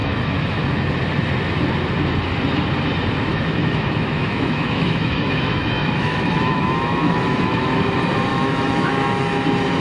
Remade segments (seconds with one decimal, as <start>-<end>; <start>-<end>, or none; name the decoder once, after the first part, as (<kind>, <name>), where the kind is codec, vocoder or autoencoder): 0.0-0.9 (autoencoder, DAC-VAE); 3.3-7.8; 8.3-8.9